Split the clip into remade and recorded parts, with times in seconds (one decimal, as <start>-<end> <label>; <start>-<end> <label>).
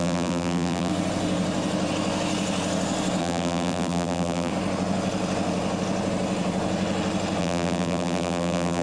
0.0-0.9 remade; 0.9-3.2 recorded; 3.2-4.5 remade; 4.5-7.4 recorded; 7.4-8.8 remade